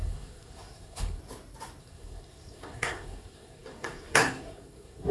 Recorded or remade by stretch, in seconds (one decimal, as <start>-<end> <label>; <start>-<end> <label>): 0.0-1.2 remade; 1.2-1.8 recorded; 1.8-5.1 remade